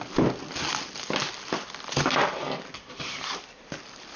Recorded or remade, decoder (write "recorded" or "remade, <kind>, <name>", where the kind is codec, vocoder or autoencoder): recorded